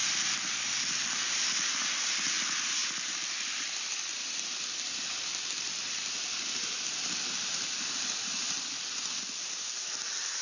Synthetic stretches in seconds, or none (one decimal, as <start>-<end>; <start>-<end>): 0.0-10.4